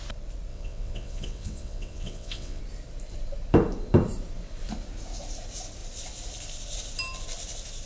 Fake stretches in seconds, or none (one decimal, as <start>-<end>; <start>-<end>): 0.5-2.6